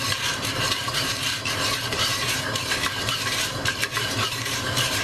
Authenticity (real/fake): fake